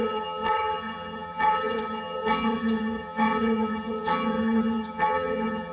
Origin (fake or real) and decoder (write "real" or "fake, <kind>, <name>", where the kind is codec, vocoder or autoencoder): fake, vocoder, HiFi-GAN